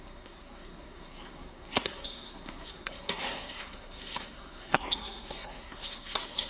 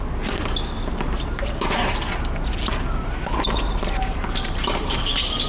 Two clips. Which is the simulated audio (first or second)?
first